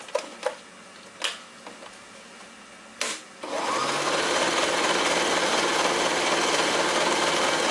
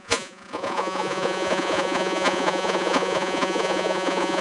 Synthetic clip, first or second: second